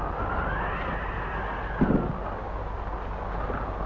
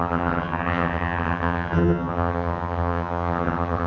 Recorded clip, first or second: first